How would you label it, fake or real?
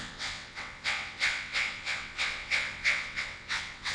fake